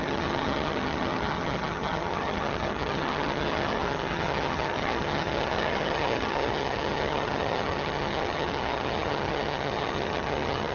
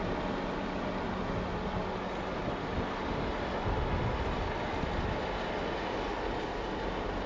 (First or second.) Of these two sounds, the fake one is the first